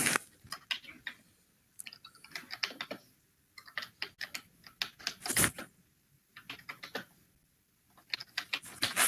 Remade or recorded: recorded